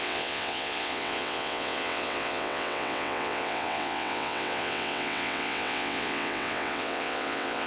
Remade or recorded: remade